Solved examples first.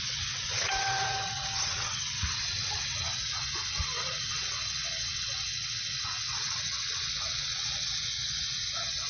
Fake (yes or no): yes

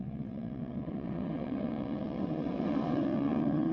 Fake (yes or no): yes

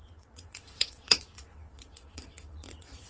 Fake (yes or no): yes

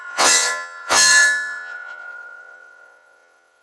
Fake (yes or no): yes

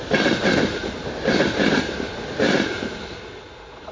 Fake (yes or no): no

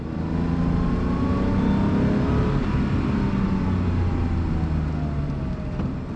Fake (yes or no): no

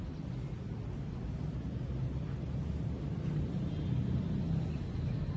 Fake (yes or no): no